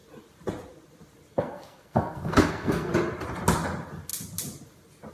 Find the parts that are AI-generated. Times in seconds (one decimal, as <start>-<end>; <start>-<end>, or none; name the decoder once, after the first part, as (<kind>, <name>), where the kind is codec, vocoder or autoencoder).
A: 1.3-2.9 (codec, SNAC)